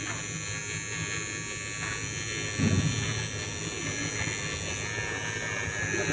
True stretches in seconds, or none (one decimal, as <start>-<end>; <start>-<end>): 0.0-6.1